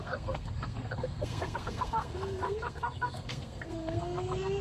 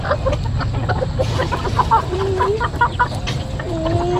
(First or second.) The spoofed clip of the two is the first